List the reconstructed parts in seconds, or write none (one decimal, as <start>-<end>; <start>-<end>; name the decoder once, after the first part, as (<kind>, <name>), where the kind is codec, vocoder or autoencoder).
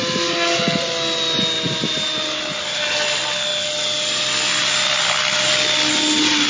none